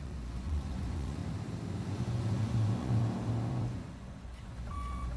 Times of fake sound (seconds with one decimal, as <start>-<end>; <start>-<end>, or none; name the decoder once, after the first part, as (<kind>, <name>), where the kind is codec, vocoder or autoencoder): 0.0-1.2 (vocoder, Vocos); 1.9-3.0; 3.5-5.2